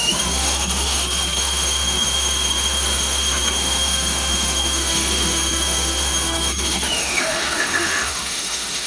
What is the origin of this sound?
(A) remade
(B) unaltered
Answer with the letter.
A